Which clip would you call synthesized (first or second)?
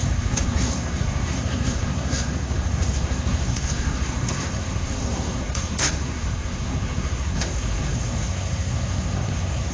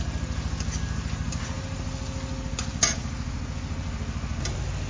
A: first